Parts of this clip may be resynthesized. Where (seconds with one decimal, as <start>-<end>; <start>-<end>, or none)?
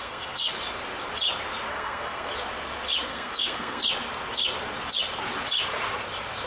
0.0-0.5; 1.7-2.3; 3.1-3.8